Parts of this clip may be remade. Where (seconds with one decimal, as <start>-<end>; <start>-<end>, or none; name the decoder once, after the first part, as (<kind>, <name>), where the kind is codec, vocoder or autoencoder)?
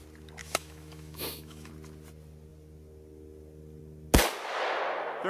0.4-1.7 (autoencoder, DAC-VAE)